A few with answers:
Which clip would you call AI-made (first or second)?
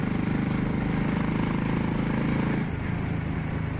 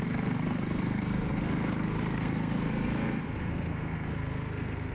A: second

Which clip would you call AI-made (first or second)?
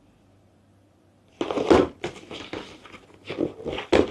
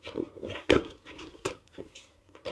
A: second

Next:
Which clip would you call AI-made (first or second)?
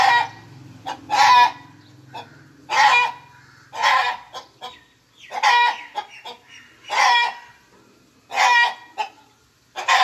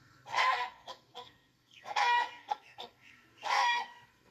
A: second